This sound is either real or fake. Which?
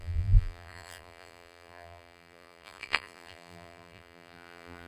fake